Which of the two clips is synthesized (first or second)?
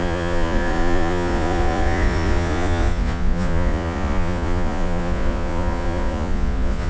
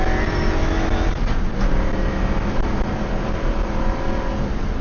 first